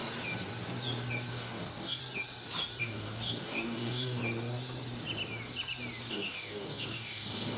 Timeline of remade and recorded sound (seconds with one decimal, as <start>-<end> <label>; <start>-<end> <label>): 0.0-1.3 recorded; 1.3-2.0 remade; 2.0-2.8 recorded; 2.8-4.2 remade; 4.2-6.1 recorded; 6.1-7.6 remade

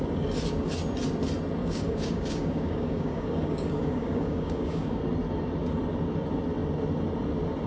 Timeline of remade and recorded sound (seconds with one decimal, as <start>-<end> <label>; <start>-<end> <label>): 0.0-1.6 recorded; 1.6-5.0 remade; 5.0-7.7 recorded

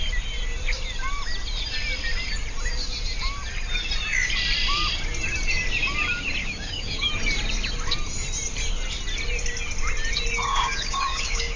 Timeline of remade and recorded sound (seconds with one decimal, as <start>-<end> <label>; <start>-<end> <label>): 0.0-6.4 recorded; 6.4-7.1 remade; 7.1-10.5 recorded; 10.5-11.6 remade

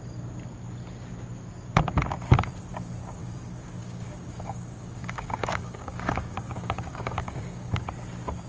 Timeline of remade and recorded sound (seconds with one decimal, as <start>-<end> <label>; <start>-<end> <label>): 0.0-3.2 recorded; 3.2-7.9 remade; 7.9-8.5 recorded

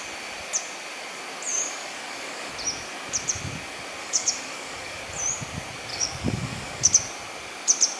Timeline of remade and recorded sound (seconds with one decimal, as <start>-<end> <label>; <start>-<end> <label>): 0.0-1.5 recorded; 1.5-2.5 remade; 2.5-4.0 recorded; 4.0-5.0 remade; 5.0-5.9 recorded; 5.9-6.9 remade; 6.9-8.0 recorded

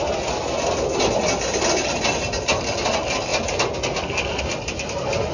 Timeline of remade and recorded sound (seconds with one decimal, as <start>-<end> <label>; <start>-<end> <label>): 0.0-5.3 recorded

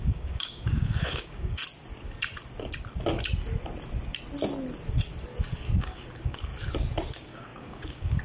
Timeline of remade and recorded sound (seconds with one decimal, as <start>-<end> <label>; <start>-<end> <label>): 0.0-1.6 remade; 1.6-5.8 recorded; 5.8-6.5 remade; 6.5-7.1 recorded; 7.1-8.2 remade